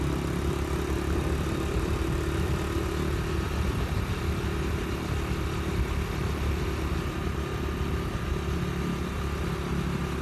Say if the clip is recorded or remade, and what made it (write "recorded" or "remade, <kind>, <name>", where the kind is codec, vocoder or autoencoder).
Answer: recorded